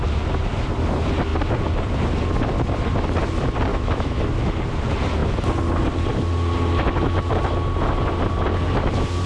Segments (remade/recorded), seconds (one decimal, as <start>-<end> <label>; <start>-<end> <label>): 0.0-3.7 recorded; 3.7-4.2 remade; 4.2-9.3 recorded